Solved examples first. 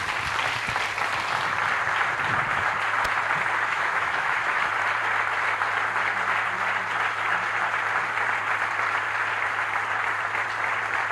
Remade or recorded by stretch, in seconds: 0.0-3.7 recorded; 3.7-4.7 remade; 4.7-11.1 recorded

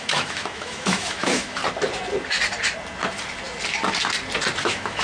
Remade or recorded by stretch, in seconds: 0.0-1.6 remade; 1.6-4.6 recorded; 4.6-5.0 remade

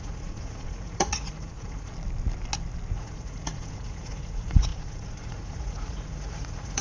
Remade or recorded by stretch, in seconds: 0.0-1.9 remade; 1.9-2.9 recorded; 2.9-6.8 remade

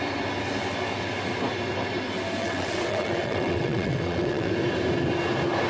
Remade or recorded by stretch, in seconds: 0.0-2.4 recorded; 2.4-4.5 remade; 4.5-5.7 recorded

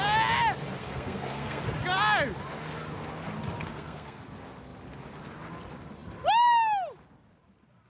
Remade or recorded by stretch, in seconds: 0.0-0.8 recorded; 0.8-1.6 remade; 1.6-3.6 recorded; 3.6-4.2 remade; 4.2-7.9 recorded

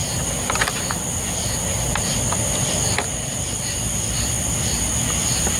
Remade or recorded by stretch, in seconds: 0.0-5.6 recorded